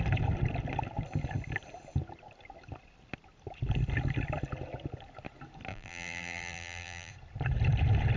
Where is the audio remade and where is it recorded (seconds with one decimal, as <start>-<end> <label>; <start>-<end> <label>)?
0.0-5.7 recorded; 5.7-7.1 remade; 7.1-8.2 recorded